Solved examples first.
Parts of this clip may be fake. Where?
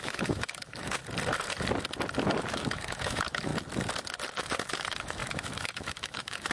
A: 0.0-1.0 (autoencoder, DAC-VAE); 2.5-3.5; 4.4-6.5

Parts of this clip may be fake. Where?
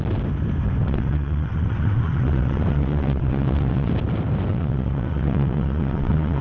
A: 0.8-3.9 (vocoder, WaveNeXt); 4.5-6.4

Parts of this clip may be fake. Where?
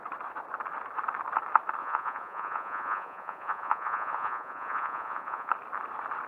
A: 1.8-5.5 (vocoder, Vocos)